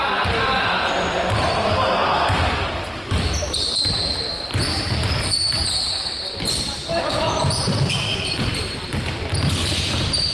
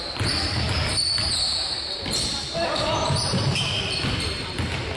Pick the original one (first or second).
second